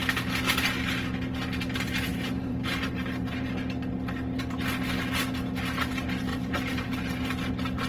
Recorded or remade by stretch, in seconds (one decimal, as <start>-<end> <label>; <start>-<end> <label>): 0.0-2.1 recorded; 2.1-2.9 remade; 2.9-6.3 recorded; 6.3-7.5 remade; 7.5-7.9 recorded